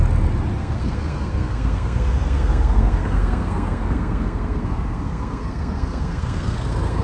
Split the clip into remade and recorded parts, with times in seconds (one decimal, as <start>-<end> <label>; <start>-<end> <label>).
0.0-0.6 recorded; 0.6-7.0 remade